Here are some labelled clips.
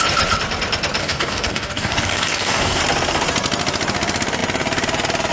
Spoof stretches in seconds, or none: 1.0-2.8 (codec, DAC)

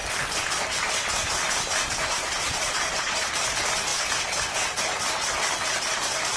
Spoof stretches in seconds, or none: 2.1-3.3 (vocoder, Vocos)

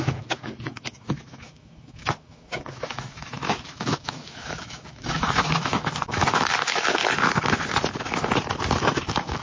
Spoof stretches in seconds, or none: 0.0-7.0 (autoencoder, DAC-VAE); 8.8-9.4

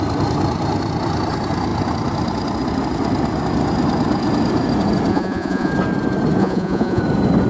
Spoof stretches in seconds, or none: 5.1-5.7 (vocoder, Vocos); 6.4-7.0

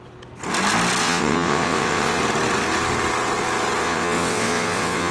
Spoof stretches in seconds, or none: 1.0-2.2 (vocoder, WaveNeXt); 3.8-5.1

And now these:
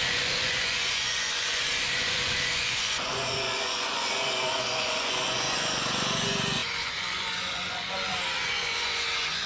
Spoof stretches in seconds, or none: 0.0-9.5 (vocoder, Vocos)

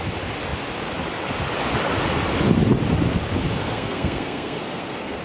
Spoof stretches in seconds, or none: 3.6-5.2 (codec, SNAC)

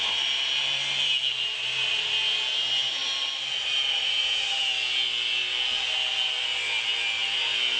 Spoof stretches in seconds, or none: none